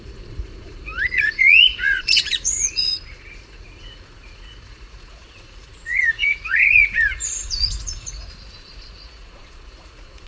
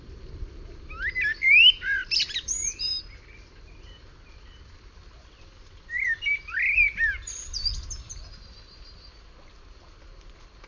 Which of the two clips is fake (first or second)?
first